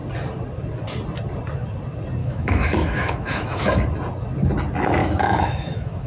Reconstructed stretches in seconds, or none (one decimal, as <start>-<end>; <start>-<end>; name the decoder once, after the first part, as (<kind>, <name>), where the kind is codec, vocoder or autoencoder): 2.2-3.6 (autoencoder, DAC-VAE); 5.0-6.1